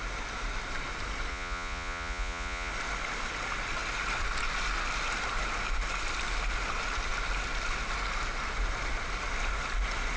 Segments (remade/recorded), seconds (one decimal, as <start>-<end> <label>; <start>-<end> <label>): 0.0-1.3 recorded; 1.3-2.7 remade; 2.7-10.2 recorded